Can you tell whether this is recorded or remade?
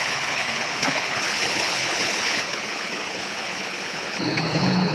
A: remade